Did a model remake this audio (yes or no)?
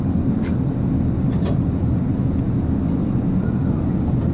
no